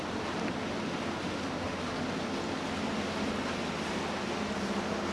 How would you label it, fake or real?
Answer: real